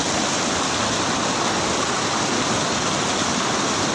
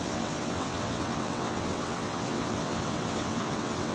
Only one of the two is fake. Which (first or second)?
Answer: second